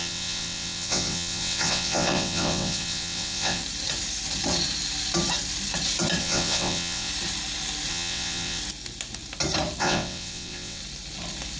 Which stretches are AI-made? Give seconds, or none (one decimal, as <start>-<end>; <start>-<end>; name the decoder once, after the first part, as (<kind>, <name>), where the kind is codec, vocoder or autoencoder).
0.0-3.6 (vocoder, WaveNeXt); 6.2-7.1; 7.9-8.6; 9.8-10.8